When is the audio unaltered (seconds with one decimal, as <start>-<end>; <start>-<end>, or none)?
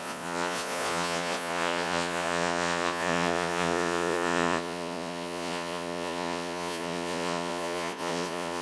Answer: none